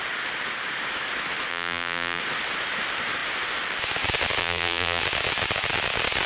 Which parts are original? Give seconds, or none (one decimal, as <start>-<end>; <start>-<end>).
0.0-1.5; 2.2-4.4; 5.0-6.3